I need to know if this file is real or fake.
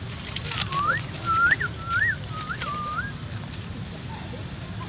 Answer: real